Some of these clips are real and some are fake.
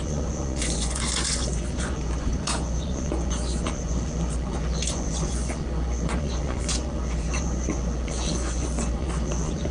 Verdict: fake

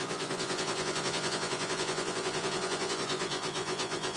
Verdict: fake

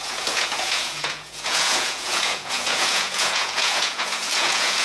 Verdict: fake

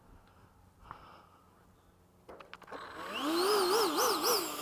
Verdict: real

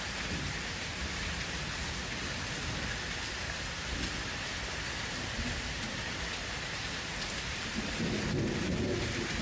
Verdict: real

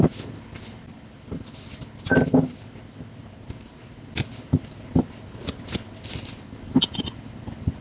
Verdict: real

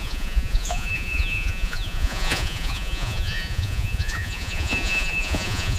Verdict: fake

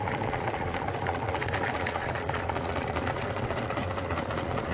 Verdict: fake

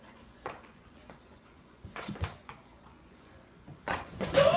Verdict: fake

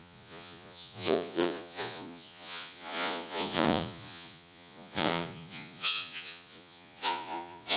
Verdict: fake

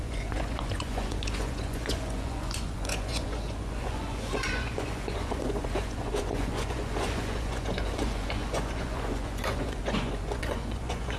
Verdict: fake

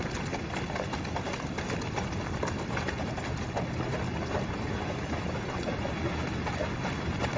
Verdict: real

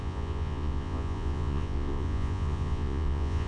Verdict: fake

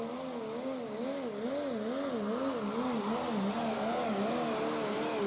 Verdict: real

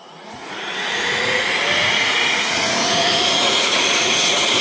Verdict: fake